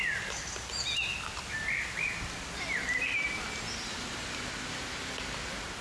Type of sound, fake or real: real